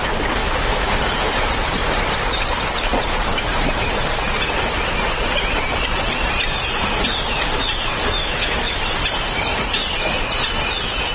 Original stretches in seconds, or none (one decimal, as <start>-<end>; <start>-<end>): 0.0-0.4; 0.9-8.2; 8.8-11.1